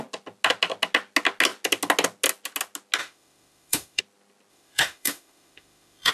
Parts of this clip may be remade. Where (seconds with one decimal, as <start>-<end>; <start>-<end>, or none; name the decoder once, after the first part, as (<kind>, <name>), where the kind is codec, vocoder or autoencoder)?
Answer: 3.0-4.0 (autoencoder, DAC-VAE); 4.5-6.1

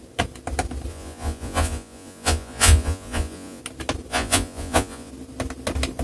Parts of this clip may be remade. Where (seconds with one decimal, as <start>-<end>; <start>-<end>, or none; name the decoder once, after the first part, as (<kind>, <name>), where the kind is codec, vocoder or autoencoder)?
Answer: 0.9-3.6 (vocoder, Vocos); 4.1-5.1

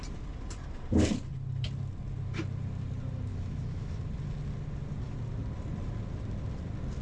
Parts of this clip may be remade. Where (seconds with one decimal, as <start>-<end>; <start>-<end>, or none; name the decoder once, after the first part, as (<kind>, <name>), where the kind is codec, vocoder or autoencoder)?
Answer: 3.3-3.9 (autoencoder, DAC-VAE)

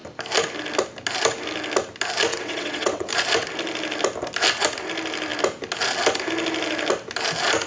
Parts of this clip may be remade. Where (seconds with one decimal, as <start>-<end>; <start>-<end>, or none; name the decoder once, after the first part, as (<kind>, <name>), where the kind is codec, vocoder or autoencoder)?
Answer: 2.3-3.1 (vocoder, WaveNeXt)

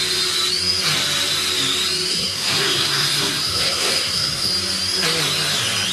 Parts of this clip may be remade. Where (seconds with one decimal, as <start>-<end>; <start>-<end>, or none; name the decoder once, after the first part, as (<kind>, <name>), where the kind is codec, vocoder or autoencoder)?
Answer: 2.1-4.5 (codec, SNAC)